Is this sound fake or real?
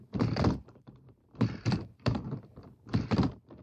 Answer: fake